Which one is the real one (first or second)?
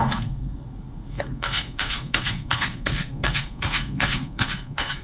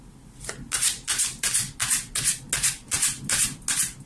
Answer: second